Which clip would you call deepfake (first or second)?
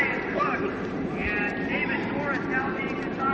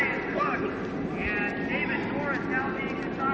first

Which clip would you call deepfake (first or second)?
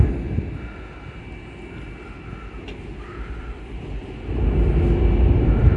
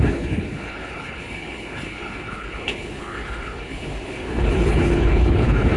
second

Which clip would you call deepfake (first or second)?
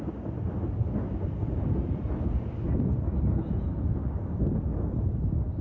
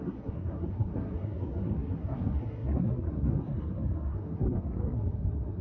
second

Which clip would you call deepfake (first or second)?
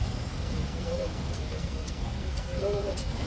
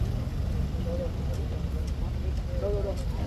first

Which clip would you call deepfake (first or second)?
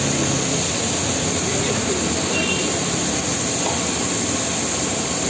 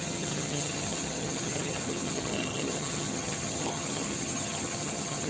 second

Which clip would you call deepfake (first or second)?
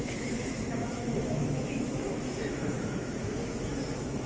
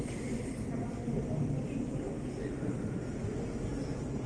first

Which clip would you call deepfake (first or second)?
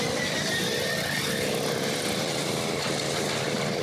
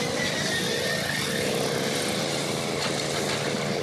first